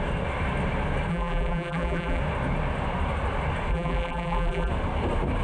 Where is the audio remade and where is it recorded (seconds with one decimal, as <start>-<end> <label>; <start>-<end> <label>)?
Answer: 0.0-1.1 recorded; 1.1-2.2 remade; 2.2-3.7 recorded; 3.7-4.7 remade; 4.7-5.4 recorded